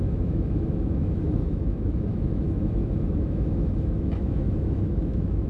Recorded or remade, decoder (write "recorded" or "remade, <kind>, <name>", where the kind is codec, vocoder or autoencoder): remade, autoencoder, DAC-VAE